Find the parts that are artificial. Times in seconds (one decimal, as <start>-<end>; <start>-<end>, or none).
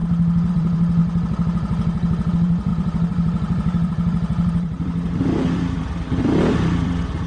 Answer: 0.5-1.0; 2.3-7.3